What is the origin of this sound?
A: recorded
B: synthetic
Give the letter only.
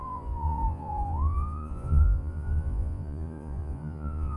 B